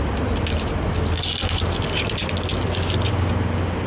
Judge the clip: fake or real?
real